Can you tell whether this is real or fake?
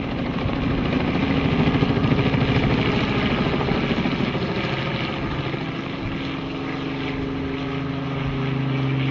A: real